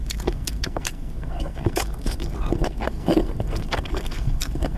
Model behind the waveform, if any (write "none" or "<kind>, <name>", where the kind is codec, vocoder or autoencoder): codec, SNAC